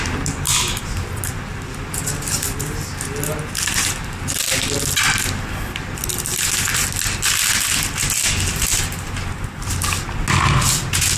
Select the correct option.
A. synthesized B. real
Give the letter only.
B